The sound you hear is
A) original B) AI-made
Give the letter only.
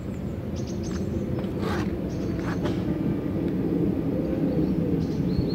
A